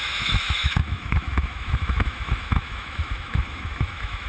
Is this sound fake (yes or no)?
yes